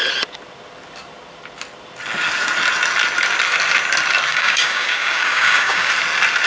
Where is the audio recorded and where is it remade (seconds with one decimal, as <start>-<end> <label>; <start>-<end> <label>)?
0.0-4.3 recorded; 4.3-5.9 remade; 5.9-6.5 recorded

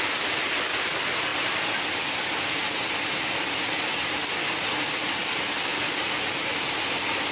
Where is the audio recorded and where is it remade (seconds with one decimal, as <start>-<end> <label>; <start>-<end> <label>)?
0.0-7.3 recorded

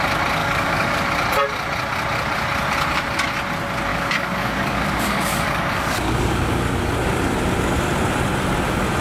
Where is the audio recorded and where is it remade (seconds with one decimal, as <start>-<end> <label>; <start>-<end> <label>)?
0.0-0.4 recorded; 0.4-1.0 remade; 1.0-3.9 recorded; 3.9-6.9 remade; 6.9-9.0 recorded

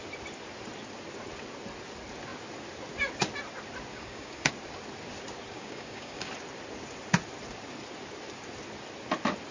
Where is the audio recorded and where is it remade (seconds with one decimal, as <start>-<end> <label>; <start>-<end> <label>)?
0.0-3.9 recorded; 3.9-4.5 remade; 4.5-5.5 recorded; 5.5-6.3 remade; 6.3-9.5 recorded

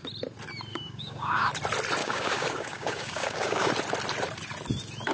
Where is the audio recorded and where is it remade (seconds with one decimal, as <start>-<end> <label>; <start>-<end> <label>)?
0.0-0.7 recorded; 0.7-1.5 remade; 1.5-2.0 recorded; 2.0-3.7 remade; 3.7-5.1 recorded

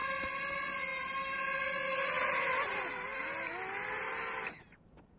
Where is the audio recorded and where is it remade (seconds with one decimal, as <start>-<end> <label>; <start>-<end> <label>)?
0.0-5.2 recorded